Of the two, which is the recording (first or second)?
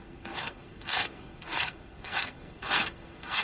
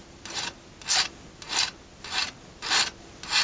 second